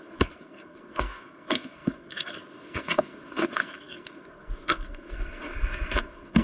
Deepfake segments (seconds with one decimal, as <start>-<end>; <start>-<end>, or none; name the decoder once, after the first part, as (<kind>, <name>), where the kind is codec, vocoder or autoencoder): 0.0-6.4 (codec, SNAC)